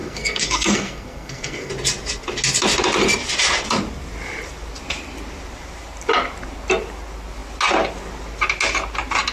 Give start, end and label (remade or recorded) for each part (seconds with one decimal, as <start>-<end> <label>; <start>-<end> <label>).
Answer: 0.0-1.7 remade; 1.7-9.3 recorded